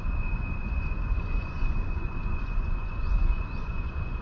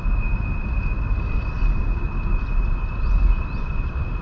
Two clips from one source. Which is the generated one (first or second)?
first